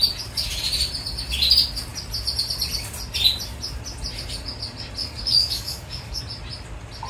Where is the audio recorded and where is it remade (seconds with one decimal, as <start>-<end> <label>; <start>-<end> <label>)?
0.0-5.0 recorded; 5.0-6.2 remade; 6.2-7.1 recorded